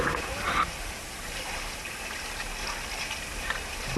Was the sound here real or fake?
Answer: real